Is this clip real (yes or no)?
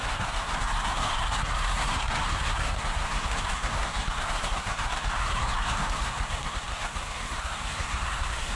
no